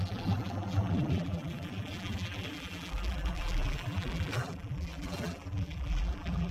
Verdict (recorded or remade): remade